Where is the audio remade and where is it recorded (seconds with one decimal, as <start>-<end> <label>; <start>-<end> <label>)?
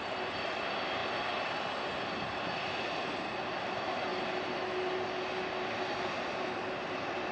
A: 0.0-7.3 recorded